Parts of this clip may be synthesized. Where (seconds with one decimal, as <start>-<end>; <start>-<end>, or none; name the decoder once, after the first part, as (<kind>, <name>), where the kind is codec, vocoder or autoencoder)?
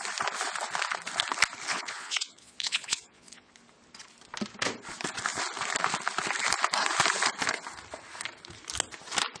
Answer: 1.7-3.5 (vocoder, Vocos)